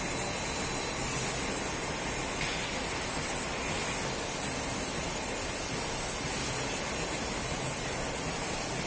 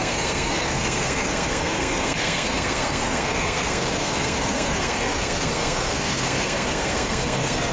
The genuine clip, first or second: first